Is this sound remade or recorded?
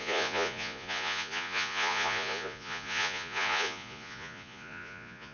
remade